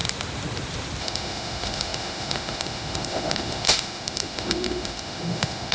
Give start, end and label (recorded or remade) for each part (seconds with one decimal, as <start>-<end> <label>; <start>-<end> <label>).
0.0-1.0 recorded; 1.0-5.7 remade